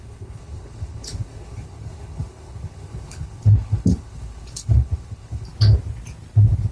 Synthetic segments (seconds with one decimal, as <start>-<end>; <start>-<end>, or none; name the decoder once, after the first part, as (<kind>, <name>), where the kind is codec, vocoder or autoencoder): 0.0-5.5 (codec, HILCodec)